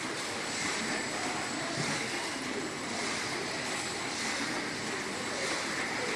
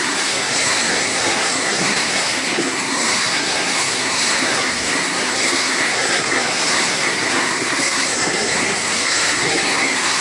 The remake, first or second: second